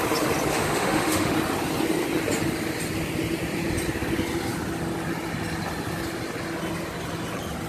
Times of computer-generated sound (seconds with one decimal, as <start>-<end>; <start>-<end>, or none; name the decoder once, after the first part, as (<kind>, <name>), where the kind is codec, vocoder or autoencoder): 0.5-1.3 (autoencoder, DAC-VAE)